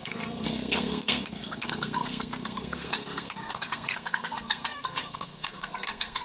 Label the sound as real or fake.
fake